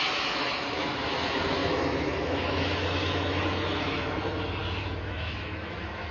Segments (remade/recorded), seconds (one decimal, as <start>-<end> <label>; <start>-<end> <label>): 0.0-6.1 remade